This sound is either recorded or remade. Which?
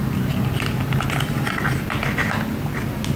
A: recorded